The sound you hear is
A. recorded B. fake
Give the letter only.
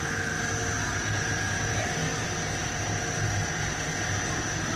A